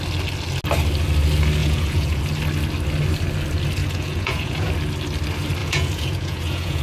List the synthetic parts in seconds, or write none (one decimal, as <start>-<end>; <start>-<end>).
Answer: 1.6-2.2; 3.8-4.7; 5.6-6.8